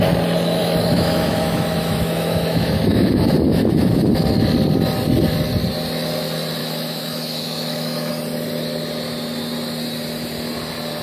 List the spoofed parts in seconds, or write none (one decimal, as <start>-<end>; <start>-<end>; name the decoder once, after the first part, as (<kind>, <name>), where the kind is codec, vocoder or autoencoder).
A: 0.6-4.1 (autoencoder, DAC-VAE); 6.6-8.1